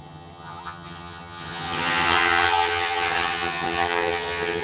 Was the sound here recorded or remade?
remade